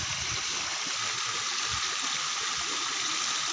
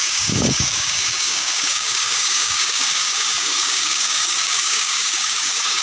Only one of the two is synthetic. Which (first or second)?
second